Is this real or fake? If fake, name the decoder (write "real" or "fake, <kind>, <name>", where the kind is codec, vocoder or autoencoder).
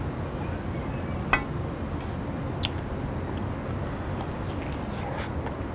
real